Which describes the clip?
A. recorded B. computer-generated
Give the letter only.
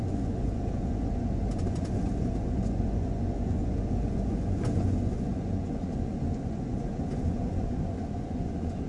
B